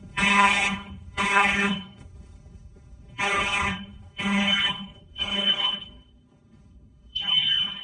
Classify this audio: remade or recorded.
remade